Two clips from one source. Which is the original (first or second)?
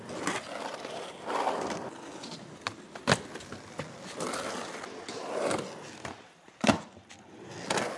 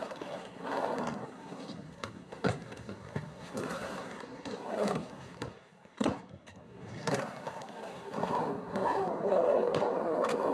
first